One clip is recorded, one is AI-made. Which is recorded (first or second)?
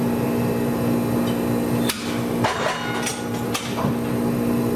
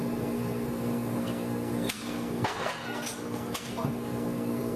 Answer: first